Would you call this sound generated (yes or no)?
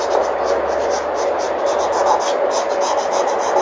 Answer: no